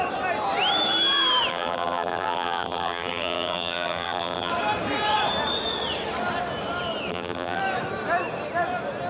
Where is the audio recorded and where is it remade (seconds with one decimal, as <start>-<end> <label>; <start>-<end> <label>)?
0.0-1.5 recorded; 1.5-4.5 remade; 4.5-7.1 recorded; 7.1-7.6 remade; 7.6-9.1 recorded